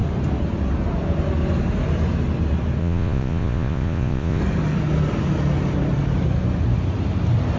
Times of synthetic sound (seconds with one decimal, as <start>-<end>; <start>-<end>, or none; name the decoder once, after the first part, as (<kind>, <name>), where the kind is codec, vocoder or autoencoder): 2.8-4.4 (vocoder, Vocos)